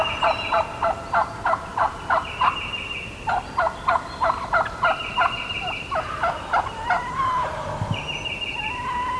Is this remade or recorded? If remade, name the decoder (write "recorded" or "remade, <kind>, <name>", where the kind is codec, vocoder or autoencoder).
recorded